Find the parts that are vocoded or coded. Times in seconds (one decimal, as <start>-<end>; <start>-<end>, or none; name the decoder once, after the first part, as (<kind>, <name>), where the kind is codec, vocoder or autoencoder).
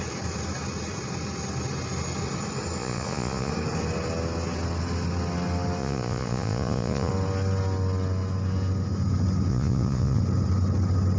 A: 2.8-3.5 (vocoder, Vocos); 5.8-7.1; 9.5-10.2